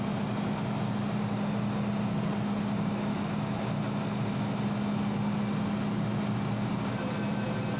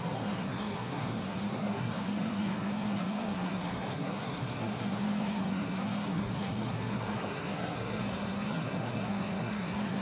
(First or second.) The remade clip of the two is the second